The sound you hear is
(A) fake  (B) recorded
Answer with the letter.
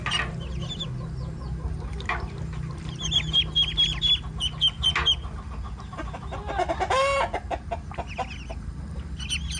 B